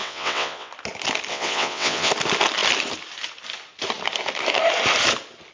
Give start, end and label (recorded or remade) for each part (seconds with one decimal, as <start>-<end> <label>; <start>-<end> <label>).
0.0-0.7 remade; 0.7-1.3 recorded; 1.3-2.1 remade; 2.1-5.5 recorded